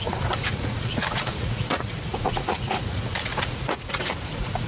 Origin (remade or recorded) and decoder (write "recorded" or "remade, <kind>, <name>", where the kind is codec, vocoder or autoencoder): remade, vocoder, Vocos